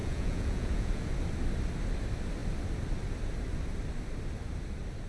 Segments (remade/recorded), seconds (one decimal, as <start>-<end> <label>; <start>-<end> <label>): 0.0-1.1 remade; 1.1-5.1 recorded